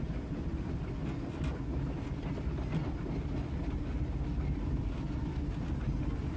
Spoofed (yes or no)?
no